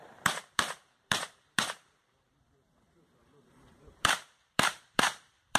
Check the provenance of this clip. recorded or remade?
remade